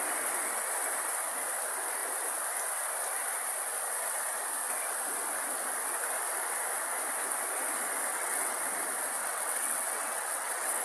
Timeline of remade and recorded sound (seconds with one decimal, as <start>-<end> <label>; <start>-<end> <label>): 0.0-8.1 recorded; 8.1-8.6 remade; 8.6-9.2 recorded; 9.2-10.8 remade